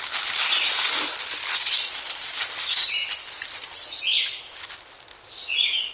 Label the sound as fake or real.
real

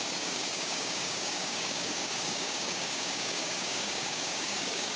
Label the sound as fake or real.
fake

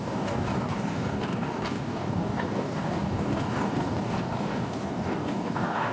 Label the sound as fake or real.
fake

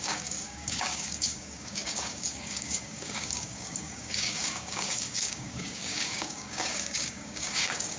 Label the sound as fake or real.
fake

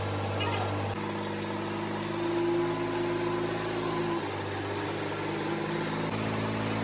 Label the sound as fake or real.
real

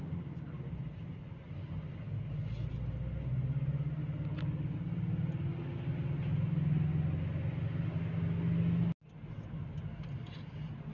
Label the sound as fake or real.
real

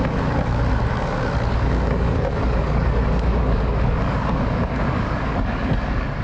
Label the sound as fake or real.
fake